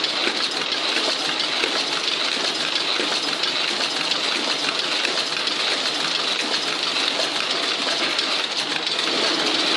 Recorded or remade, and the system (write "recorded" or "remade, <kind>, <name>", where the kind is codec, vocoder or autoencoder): recorded